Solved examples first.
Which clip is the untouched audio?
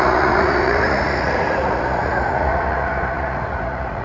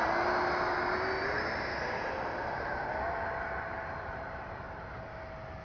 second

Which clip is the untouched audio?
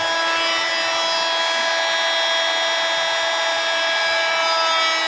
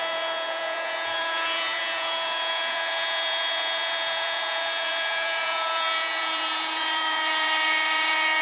first